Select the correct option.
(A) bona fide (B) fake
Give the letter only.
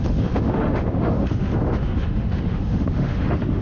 B